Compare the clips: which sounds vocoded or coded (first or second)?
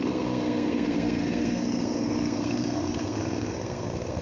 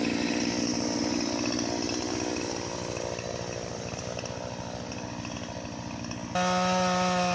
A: first